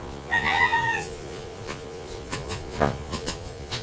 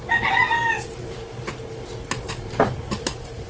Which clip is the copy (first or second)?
first